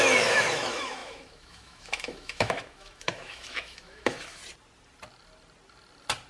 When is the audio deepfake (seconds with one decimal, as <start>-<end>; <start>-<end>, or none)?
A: 0.0-4.4